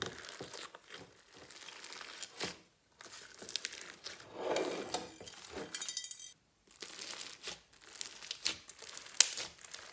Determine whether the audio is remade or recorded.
recorded